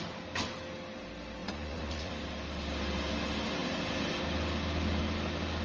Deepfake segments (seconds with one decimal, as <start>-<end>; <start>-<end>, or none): 1.4-2.1